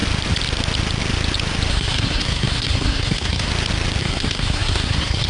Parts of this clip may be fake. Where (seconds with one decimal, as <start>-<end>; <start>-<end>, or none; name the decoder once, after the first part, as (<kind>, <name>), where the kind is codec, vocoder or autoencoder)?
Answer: 1.7-3.5 (codec, SNAC); 4.0-5.3